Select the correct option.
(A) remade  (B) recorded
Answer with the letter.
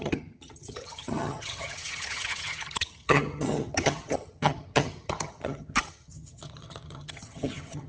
A